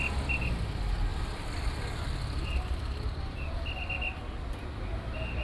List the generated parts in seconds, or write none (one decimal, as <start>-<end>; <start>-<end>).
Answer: 1.1-4.2